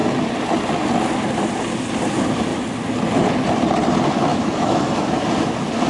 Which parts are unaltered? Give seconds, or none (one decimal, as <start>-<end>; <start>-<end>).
0.0-4.3; 5.3-5.9